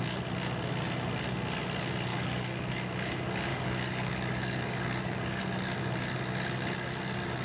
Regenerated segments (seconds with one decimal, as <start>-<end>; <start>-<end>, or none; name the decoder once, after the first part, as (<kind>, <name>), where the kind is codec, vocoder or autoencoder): 2.1-2.7 (codec, DAC); 3.5-5.4